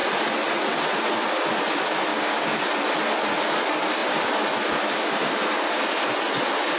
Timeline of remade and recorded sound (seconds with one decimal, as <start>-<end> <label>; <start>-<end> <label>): 0.0-2.1 recorded; 2.1-2.7 remade; 2.7-6.8 recorded